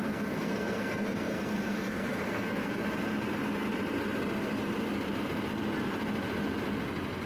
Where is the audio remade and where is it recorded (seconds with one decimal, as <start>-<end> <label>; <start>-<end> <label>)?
0.0-2.8 remade; 2.8-7.3 recorded